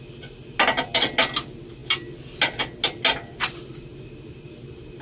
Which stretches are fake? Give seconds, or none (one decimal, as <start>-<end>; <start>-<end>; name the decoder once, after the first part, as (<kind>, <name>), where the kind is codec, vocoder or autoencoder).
none